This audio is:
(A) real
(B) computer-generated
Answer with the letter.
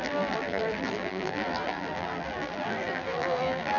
B